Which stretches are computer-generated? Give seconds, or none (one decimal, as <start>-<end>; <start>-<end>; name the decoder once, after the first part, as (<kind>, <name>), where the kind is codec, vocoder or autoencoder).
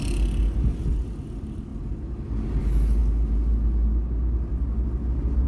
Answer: none